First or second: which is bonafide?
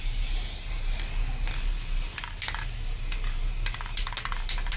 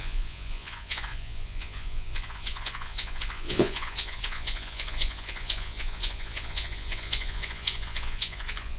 first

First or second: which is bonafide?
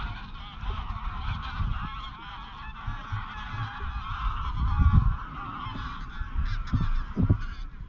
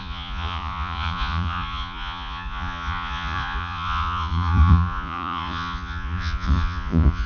first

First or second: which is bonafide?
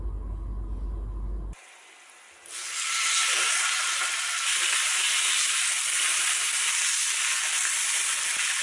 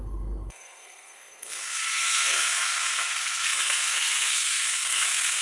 first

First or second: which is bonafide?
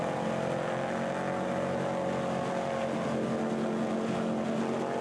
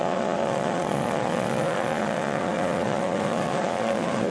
first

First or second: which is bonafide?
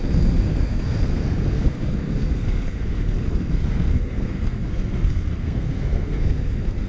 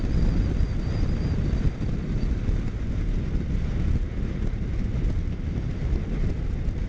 second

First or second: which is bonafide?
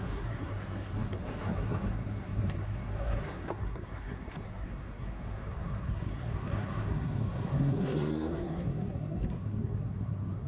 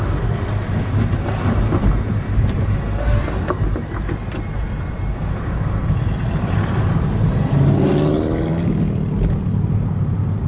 second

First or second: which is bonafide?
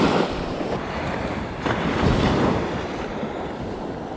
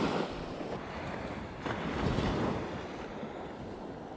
second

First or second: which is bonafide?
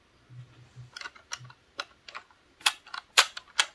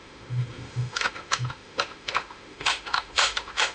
first